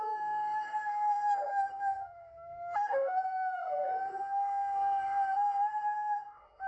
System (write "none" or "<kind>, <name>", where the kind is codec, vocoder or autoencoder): autoencoder, DAC-VAE